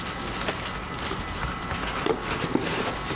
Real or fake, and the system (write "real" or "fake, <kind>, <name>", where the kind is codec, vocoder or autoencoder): real